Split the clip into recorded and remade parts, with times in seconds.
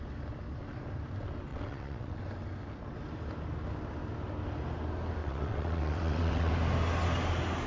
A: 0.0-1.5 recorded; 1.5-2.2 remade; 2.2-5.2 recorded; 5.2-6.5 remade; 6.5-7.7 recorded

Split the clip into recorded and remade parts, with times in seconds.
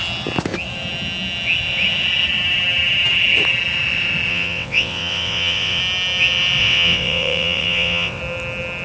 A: 0.0-4.3 recorded; 4.3-5.8 remade; 5.8-6.6 recorded; 6.6-8.2 remade; 8.2-8.8 recorded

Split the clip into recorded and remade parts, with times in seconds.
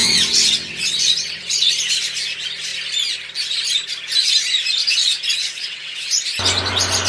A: 0.0-1.7 remade; 1.7-4.8 recorded; 4.8-6.1 remade; 6.1-7.1 recorded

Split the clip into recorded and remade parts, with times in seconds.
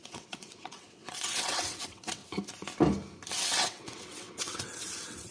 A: 0.0-2.2 remade; 2.2-3.3 recorded; 3.3-5.3 remade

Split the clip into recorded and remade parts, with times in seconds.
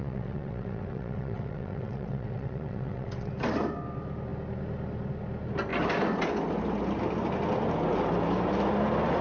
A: 0.0-3.3 remade; 3.3-9.2 recorded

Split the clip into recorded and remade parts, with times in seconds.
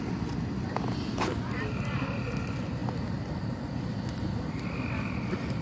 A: 0.0-5.6 recorded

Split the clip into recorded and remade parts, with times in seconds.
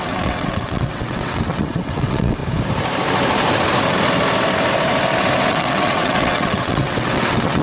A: 0.0-2.4 remade; 2.4-5.5 recorded; 5.5-7.6 remade